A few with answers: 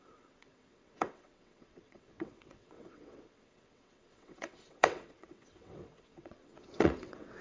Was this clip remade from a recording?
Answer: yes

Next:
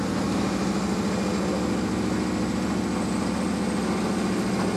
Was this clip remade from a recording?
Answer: no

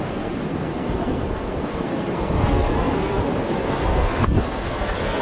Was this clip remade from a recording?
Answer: yes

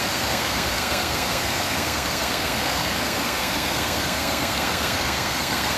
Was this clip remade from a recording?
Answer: yes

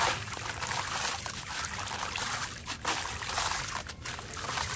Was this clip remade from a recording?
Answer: no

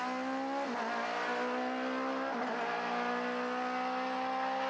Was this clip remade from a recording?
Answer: no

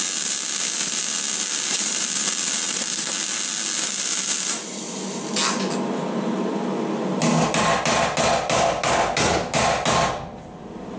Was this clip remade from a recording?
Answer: no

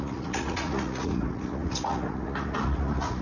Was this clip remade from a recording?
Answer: yes